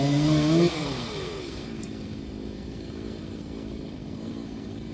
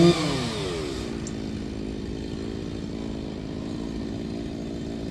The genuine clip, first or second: second